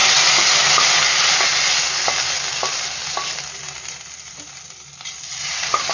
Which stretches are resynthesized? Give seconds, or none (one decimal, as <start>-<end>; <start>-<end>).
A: 3.5-5.9